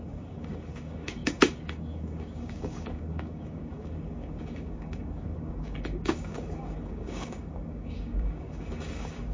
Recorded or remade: remade